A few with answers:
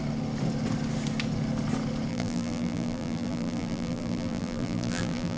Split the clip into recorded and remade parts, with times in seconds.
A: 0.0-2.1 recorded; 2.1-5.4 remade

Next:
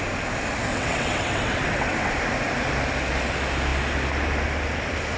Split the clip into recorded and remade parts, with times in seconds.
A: 0.0-0.7 recorded; 0.7-2.1 remade; 2.1-5.2 recorded